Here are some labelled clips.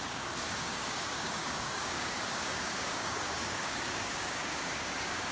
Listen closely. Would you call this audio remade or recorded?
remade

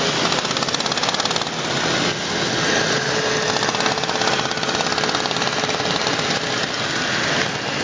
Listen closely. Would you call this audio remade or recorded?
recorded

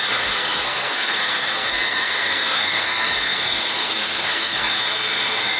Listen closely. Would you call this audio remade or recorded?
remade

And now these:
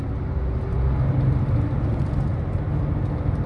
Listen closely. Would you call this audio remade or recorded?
recorded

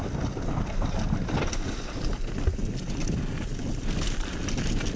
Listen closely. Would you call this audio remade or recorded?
recorded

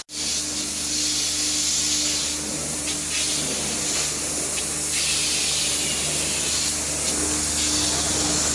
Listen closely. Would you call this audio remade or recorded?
recorded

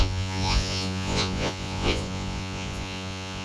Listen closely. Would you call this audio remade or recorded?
remade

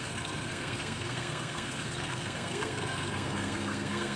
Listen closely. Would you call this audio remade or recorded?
remade